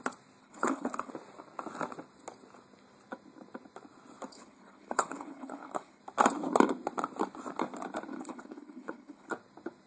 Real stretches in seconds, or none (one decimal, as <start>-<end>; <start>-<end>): 0.0-0.4; 1.1-4.3; 6.0-8.1; 9.3-9.9